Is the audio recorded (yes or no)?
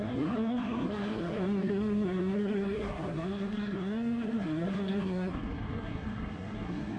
no